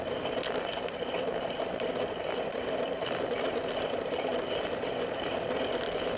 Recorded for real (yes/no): yes